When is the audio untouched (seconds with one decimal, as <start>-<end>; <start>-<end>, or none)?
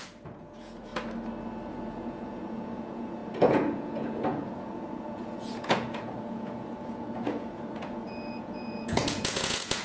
0.9-1.7